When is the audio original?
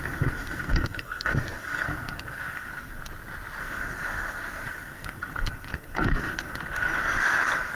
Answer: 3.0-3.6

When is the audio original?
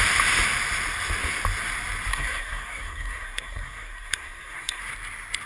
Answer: 0.0-2.1; 4.8-5.5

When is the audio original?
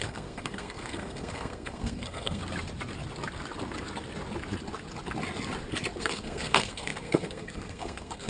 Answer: 2.4-6.0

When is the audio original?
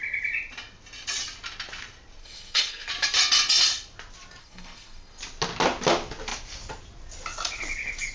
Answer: 0.0-2.2; 2.9-4.4; 5.2-8.1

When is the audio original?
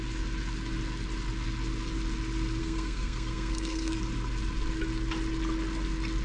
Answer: 0.0-2.6; 4.0-6.2